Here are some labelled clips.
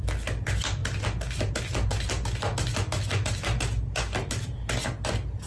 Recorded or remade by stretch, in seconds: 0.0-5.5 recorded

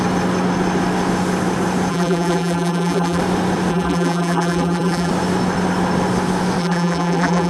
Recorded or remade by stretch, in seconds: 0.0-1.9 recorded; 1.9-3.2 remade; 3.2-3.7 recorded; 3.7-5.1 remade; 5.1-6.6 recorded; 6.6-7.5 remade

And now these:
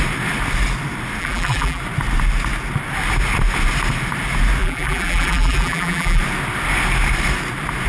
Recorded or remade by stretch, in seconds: 0.0-1.2 recorded; 1.2-1.8 remade; 1.8-4.6 recorded; 4.6-6.2 remade; 6.2-7.9 recorded